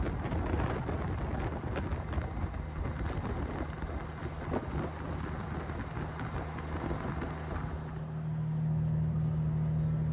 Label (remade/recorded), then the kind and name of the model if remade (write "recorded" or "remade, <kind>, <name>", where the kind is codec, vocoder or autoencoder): recorded